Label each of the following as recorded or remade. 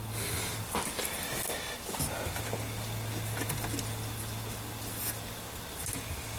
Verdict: recorded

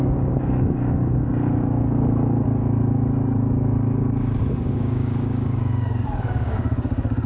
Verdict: remade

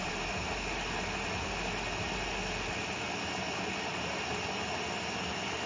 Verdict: recorded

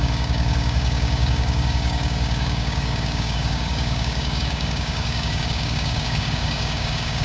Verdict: remade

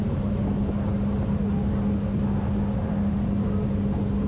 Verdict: recorded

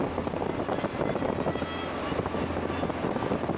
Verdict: recorded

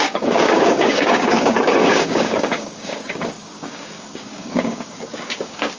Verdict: remade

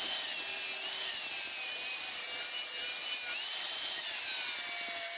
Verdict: recorded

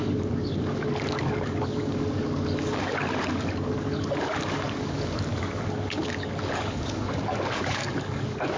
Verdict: remade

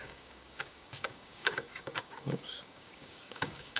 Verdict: remade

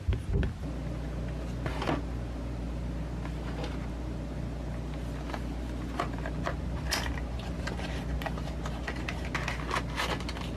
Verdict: recorded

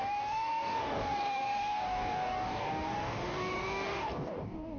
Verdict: remade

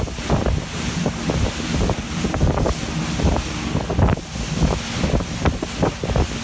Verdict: recorded